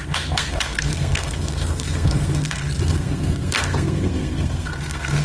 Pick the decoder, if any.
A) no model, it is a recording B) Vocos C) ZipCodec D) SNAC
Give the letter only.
D